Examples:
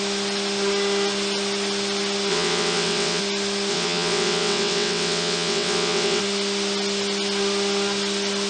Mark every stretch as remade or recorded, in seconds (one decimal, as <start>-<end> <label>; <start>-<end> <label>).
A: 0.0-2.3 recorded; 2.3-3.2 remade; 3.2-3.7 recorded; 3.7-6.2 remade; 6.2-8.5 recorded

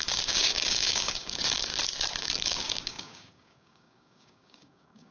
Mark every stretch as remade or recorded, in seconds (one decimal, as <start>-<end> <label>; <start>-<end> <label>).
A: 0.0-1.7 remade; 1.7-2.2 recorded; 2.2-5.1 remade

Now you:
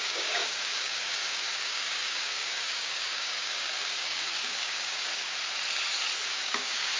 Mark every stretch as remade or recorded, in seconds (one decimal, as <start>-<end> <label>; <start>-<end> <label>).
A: 0.0-5.1 remade; 5.1-6.3 recorded; 6.3-7.0 remade

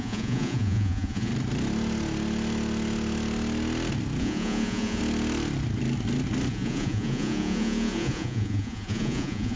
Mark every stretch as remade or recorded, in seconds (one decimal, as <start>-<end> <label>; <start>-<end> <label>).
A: 0.0-1.3 remade; 1.3-4.2 recorded; 4.2-5.0 remade; 5.0-6.5 recorded; 6.5-9.6 remade

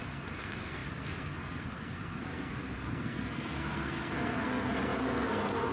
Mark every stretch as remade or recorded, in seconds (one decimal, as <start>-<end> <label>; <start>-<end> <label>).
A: 0.0-5.7 remade

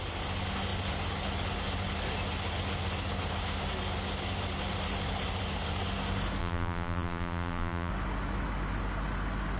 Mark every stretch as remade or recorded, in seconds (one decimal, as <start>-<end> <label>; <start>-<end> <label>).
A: 0.0-6.4 recorded; 6.4-7.9 remade; 7.9-9.6 recorded

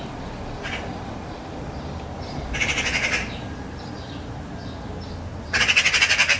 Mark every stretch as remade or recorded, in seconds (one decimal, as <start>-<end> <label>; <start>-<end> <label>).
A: 0.0-5.3 recorded; 5.3-6.0 remade; 6.0-6.4 recorded